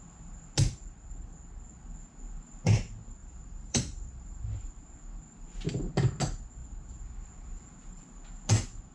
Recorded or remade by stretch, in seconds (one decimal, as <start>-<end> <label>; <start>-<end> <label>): 0.0-3.2 recorded; 3.2-4.3 remade; 4.3-8.9 recorded